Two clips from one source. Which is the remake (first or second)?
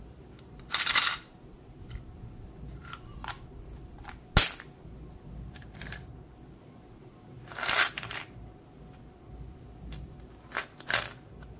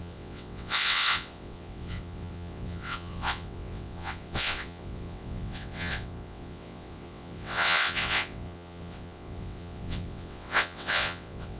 second